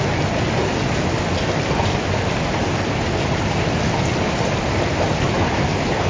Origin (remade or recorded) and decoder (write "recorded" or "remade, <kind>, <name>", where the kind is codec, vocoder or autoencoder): recorded